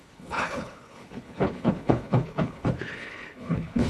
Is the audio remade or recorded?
remade